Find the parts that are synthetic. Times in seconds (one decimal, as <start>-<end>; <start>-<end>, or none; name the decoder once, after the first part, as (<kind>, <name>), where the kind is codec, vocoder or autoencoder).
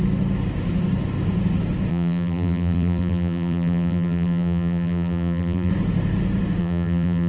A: 1.9-5.7 (vocoder, BigVGAN v2); 6.6-7.3